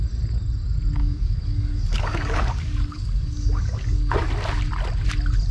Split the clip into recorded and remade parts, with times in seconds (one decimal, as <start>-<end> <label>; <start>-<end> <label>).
0.0-1.0 recorded; 1.0-4.3 remade; 4.3-5.5 recorded